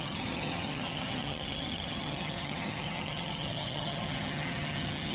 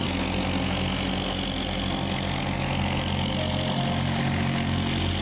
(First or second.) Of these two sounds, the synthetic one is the first